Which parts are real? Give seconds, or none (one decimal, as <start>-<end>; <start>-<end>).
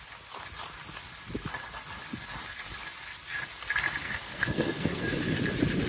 0.0-4.0; 5.2-5.9